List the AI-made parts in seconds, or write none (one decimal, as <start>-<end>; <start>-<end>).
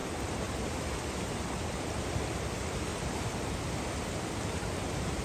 0.0-0.8; 2.9-3.5